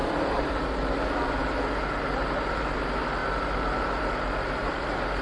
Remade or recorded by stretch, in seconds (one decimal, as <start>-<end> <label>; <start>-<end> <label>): 0.0-0.6 remade; 0.6-4.6 recorded; 4.6-5.2 remade